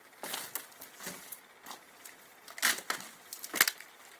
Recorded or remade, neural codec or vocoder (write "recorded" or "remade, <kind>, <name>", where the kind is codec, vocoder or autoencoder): recorded